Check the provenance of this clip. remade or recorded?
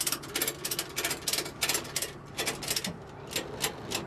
recorded